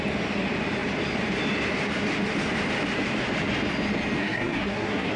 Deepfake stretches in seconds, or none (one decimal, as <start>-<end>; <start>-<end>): 4.2-5.2